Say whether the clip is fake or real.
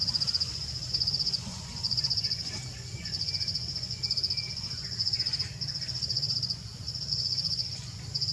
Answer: fake